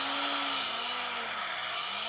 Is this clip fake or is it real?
real